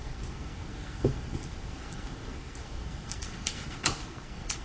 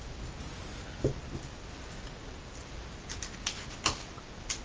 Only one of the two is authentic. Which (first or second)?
second